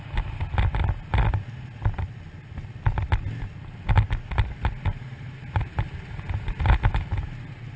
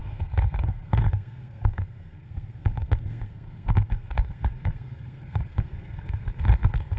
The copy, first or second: second